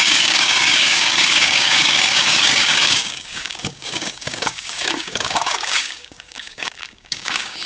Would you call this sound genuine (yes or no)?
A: no